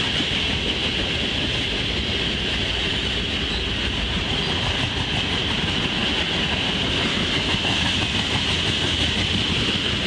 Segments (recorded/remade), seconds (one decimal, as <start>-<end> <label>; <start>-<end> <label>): 0.0-10.1 recorded